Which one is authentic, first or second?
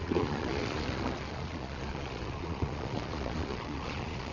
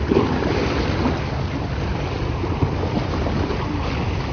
second